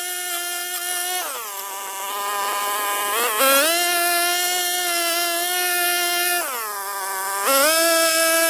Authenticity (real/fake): real